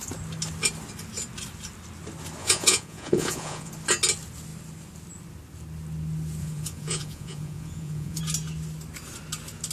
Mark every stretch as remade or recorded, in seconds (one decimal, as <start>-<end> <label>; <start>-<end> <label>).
0.0-2.4 recorded; 2.4-3.7 remade; 3.7-6.4 recorded; 6.4-8.2 remade; 8.2-9.7 recorded